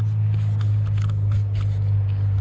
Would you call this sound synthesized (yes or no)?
no